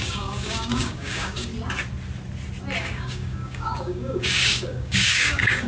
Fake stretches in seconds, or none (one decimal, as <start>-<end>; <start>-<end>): 0.0-1.5; 2.8-5.7